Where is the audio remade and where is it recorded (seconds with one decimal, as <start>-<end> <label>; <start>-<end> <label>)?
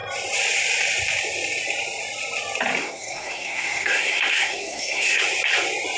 0.0-2.8 recorded; 2.8-5.2 remade; 5.2-6.0 recorded